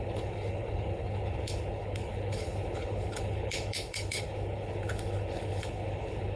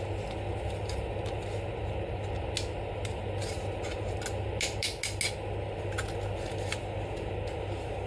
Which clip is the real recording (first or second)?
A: second